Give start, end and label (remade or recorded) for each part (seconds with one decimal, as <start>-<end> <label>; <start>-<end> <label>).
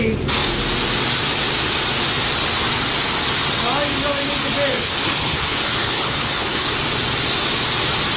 0.0-4.7 recorded; 4.7-6.7 remade; 6.7-8.2 recorded